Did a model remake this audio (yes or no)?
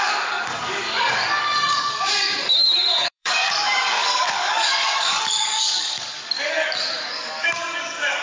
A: yes